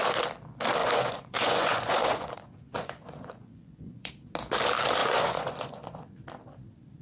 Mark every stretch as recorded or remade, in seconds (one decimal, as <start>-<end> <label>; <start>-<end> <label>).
0.0-0.8 recorded; 0.8-4.1 remade; 4.1-5.0 recorded; 5.0-6.1 remade; 6.1-7.0 recorded